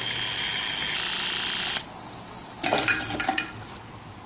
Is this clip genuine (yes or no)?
yes